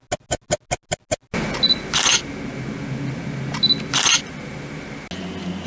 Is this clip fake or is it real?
real